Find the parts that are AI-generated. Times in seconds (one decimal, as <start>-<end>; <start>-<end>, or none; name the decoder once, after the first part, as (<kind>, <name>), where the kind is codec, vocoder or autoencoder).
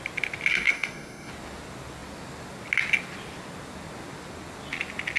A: 0.5-1.3 (codec, SNAC)